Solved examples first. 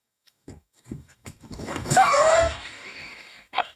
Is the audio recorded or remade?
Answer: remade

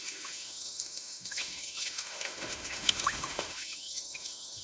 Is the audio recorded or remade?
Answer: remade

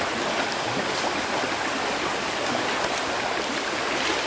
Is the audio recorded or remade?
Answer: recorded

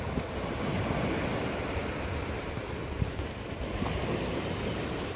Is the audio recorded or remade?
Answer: recorded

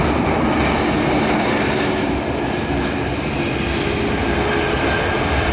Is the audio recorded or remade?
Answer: recorded